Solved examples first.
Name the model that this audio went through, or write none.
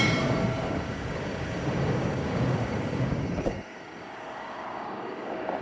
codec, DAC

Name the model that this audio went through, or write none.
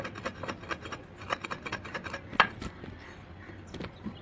none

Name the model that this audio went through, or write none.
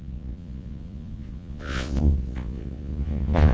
vocoder, Vocos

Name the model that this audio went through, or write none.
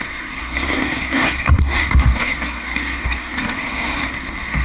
codec, SNAC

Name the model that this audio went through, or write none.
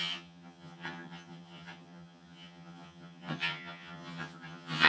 vocoder, HiFi-GAN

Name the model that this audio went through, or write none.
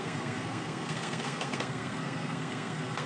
codec, SNAC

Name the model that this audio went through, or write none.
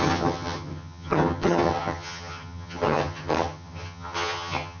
vocoder, HiFi-GAN